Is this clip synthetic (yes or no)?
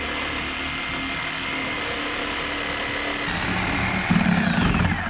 no